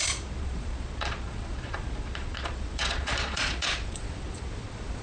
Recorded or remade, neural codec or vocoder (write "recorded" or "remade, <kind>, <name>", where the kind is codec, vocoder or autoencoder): remade, vocoder, Vocos